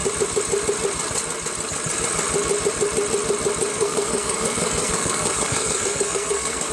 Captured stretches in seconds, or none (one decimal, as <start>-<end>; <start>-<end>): 0.0-3.7